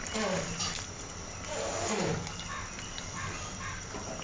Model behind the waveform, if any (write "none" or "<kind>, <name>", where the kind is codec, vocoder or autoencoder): none